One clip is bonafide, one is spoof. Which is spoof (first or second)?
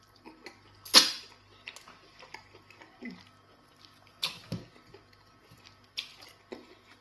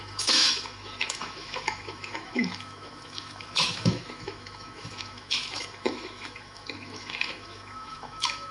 second